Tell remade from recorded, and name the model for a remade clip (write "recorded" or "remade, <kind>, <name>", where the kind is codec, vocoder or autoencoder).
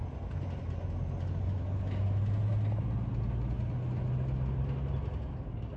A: recorded